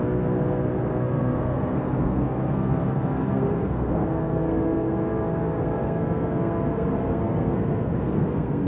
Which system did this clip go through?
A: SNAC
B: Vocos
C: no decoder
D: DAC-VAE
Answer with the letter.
A